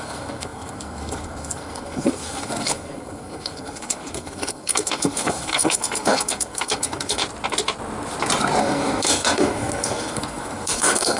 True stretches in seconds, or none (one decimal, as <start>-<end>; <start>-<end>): 7.2-8.6

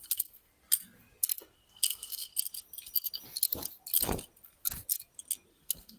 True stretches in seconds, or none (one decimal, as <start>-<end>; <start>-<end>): 0.5-1.7; 2.3-5.5